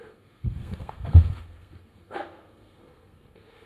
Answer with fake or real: fake